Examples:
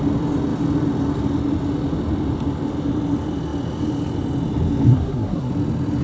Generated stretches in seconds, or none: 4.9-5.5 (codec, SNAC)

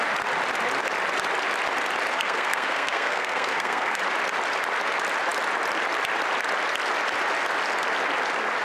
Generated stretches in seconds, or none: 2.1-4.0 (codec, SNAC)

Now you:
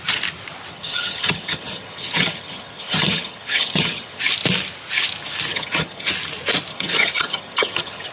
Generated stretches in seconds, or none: 0.7-4.2 (vocoder, HiFi-GAN); 5.5-6.1; 6.7-8.1

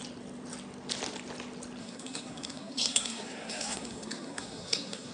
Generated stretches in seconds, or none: 1.8-5.1 (codec, SNAC)

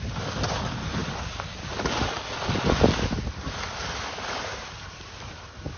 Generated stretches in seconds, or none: none

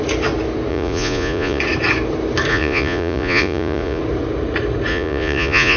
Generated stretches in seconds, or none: 0.7-1.6 (vocoder, Vocos); 2.5-4.0; 4.9-5.8